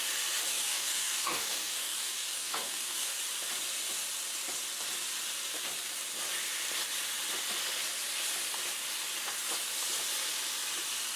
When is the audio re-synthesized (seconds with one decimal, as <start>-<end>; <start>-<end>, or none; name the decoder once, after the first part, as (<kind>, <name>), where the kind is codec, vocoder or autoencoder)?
0.5-3.2 (codec, DAC)